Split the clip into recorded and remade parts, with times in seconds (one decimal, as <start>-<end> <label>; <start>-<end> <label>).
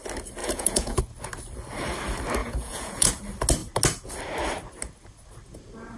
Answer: 0.0-0.4 recorded; 0.4-1.0 remade; 1.0-2.4 recorded; 2.4-3.1 remade; 3.1-6.0 recorded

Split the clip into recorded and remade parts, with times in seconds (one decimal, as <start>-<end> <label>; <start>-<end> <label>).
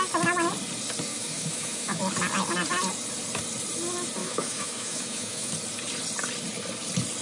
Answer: 0.0-1.1 recorded; 1.1-2.0 remade; 2.0-4.2 recorded; 4.2-5.5 remade; 5.5-7.2 recorded